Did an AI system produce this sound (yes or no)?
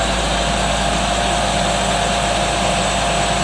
no